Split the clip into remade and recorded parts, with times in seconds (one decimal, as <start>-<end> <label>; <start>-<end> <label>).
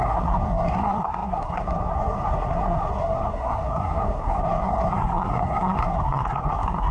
0.0-6.9 remade